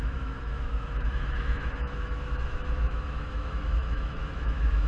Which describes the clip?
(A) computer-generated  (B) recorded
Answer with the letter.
A